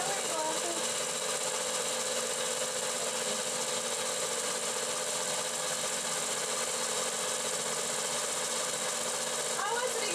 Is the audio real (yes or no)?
yes